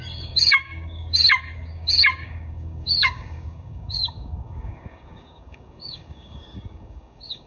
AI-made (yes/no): yes